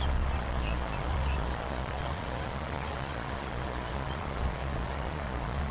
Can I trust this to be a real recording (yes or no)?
no